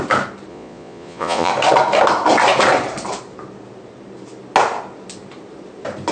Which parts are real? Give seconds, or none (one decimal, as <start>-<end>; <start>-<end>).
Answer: 0.0-0.5; 1.5-6.1